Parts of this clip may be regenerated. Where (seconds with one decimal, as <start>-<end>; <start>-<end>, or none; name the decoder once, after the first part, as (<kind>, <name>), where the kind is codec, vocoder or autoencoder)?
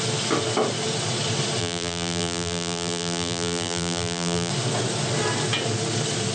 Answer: 1.6-4.5 (vocoder, BigVGAN v2)